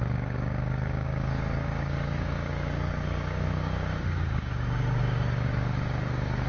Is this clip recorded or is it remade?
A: remade